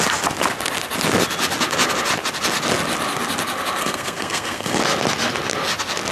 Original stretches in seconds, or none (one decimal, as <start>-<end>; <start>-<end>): 0.0-3.8; 4.8-6.1